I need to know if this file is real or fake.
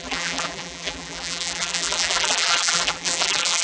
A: fake